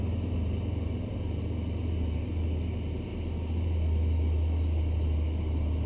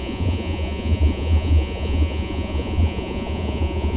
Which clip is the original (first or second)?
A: first